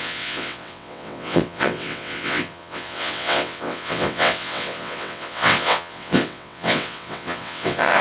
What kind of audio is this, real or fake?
fake